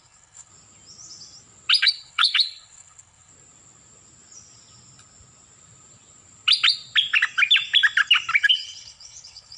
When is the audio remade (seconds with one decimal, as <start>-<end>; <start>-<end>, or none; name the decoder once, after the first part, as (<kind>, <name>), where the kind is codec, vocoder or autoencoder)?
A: 0.0-0.5 (codec, HILCodec); 1.8-3.3; 8.4-9.6